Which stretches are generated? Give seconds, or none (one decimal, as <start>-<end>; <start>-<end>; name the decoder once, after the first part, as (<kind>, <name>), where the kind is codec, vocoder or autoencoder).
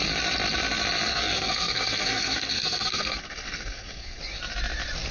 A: 1.1-4.2 (codec, SNAC)